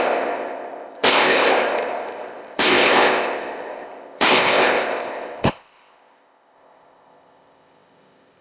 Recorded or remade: remade